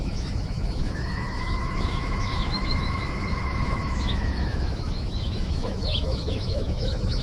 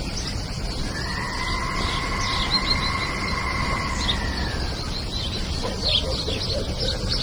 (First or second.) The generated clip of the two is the first